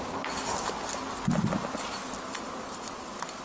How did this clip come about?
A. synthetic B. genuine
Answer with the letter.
B